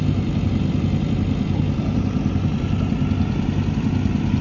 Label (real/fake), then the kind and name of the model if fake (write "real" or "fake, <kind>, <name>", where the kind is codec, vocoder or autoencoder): real